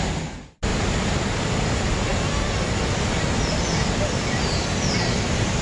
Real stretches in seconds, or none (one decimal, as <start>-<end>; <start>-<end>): 0.0-5.6